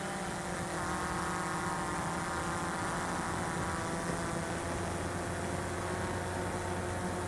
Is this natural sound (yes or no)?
yes